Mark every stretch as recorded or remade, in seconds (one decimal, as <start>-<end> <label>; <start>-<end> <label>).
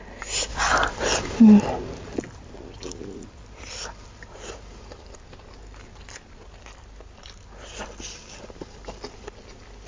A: 0.0-0.5 recorded; 0.5-1.4 remade; 1.4-2.1 recorded; 2.1-3.9 remade; 3.9-9.9 recorded